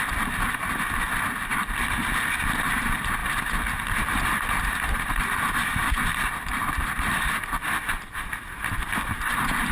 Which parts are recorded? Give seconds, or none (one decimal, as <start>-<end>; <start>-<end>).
0.0-6.1; 7.5-9.7